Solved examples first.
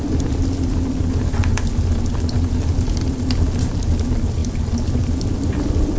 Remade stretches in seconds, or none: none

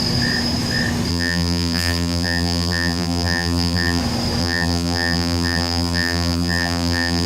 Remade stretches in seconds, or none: 1.1-4.0 (vocoder, BigVGAN v2); 4.4-7.3

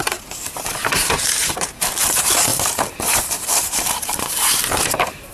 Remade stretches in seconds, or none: 0.0-5.3 (vocoder, BigVGAN v2)

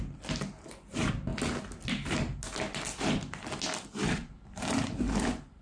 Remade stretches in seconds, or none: none

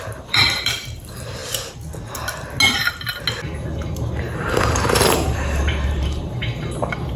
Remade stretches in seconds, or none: 0.0-1.4 (vocoder, BigVGAN v2); 4.2-6.4

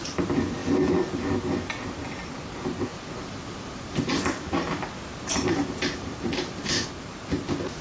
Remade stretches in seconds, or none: 2.9-6.9 (vocoder, BigVGAN v2)

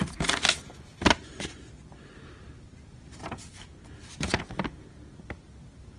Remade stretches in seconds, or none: 0.9-4.4 (vocoder, BigVGAN v2)